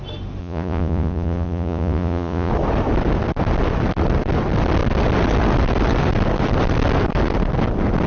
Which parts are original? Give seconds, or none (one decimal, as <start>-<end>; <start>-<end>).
0.0-0.4; 2.5-8.1